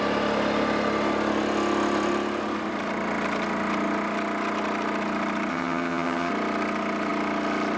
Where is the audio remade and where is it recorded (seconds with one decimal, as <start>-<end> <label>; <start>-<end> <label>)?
0.0-5.5 recorded; 5.5-6.3 remade; 6.3-7.8 recorded